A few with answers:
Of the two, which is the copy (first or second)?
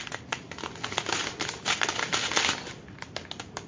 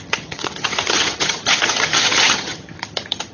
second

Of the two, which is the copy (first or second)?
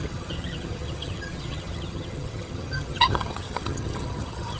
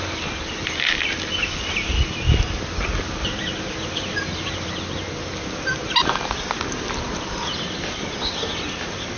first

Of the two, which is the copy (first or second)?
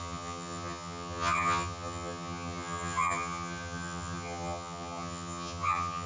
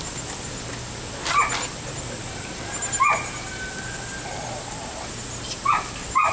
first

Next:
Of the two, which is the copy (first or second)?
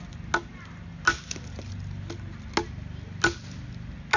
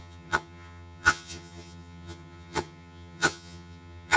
second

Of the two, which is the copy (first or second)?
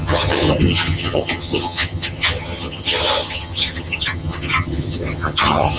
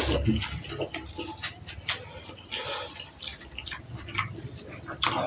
first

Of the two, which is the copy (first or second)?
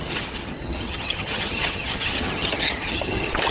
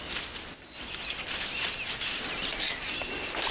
first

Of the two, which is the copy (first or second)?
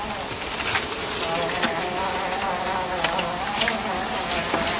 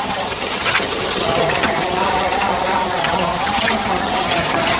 second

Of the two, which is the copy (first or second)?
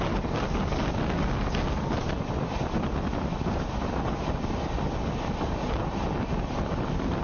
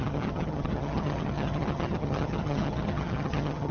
second